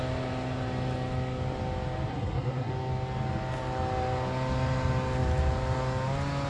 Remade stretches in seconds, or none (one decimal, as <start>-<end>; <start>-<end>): 2.1-2.7